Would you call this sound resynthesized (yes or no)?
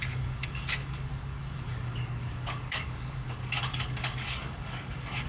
yes